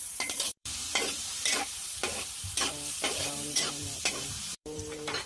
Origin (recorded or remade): remade